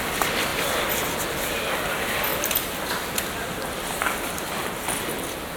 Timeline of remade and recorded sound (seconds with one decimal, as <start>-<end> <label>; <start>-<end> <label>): 0.0-5.6 remade